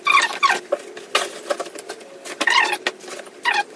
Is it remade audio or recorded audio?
recorded